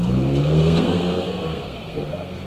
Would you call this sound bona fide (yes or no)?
no